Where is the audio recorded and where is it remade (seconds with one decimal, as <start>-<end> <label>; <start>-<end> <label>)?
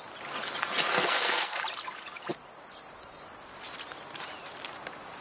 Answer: 0.0-0.9 recorded; 0.9-1.6 remade; 1.6-5.2 recorded